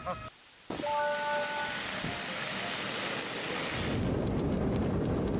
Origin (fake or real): real